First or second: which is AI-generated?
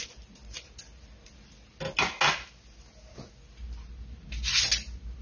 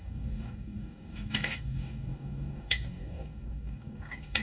second